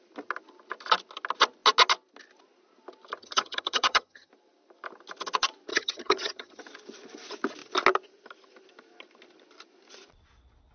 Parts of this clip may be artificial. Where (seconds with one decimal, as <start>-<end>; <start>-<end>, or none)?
3.2-4.3; 5.7-6.6